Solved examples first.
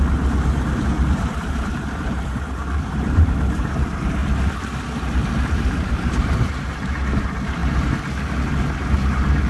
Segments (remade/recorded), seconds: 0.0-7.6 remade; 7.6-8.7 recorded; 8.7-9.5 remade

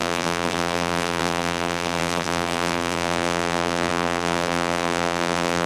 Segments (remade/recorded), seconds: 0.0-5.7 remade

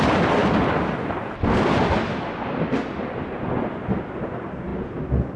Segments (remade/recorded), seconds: 0.0-0.4 recorded; 0.4-3.6 remade; 3.6-4.7 recorded; 4.7-5.4 remade